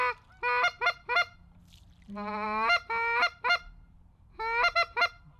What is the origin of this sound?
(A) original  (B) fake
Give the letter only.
A